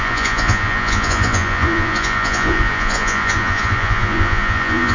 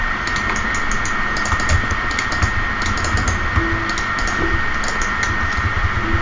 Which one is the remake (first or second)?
first